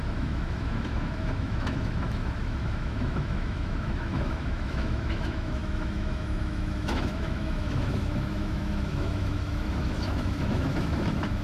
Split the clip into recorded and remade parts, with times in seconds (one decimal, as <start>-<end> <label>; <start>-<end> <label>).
0.0-11.4 remade